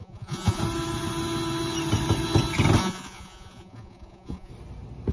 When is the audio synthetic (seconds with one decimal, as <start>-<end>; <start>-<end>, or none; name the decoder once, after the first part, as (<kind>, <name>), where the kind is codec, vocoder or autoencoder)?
0.0-0.6 (vocoder, Vocos); 2.8-4.5